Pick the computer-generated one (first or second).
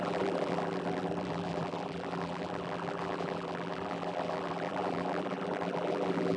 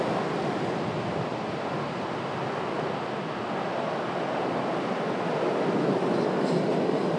first